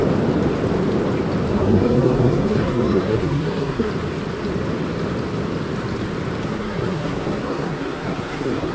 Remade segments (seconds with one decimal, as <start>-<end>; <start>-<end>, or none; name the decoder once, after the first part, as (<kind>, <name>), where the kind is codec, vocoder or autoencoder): 1.5-3.9 (codec, SNAC); 6.4-8.7